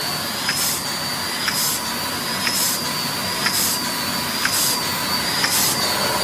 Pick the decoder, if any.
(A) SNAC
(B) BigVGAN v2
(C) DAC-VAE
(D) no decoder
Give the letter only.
D